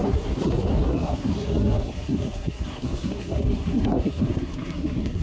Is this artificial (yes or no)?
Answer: yes